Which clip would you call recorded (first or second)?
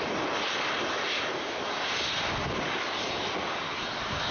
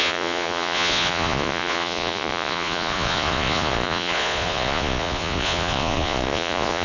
first